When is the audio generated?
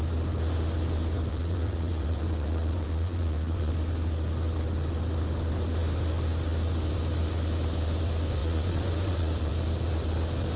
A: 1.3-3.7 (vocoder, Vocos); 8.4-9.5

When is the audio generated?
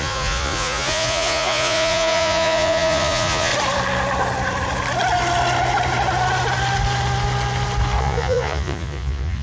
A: 0.0-3.5 (vocoder, Vocos); 8.0-9.4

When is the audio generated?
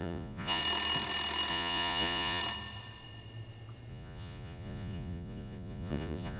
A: 0.0-0.6 (vocoder, Vocos); 1.5-2.4; 3.9-6.4